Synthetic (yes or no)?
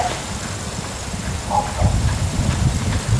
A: no